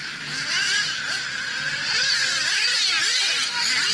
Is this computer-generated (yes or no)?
no